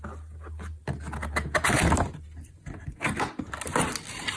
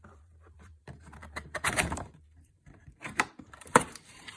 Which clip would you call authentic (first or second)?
first